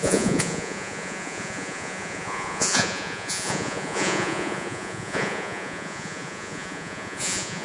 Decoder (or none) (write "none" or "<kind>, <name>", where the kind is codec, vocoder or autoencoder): vocoder, Vocos